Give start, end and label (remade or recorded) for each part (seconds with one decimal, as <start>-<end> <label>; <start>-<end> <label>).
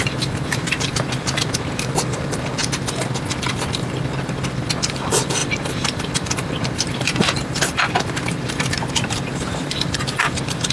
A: 0.0-2.6 remade; 2.6-4.7 recorded; 4.7-10.7 remade